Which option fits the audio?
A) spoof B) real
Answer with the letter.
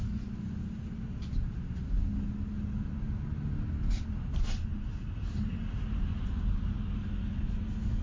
B